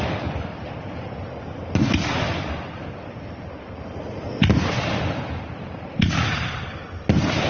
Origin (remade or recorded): recorded